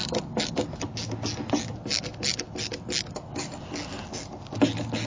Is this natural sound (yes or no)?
yes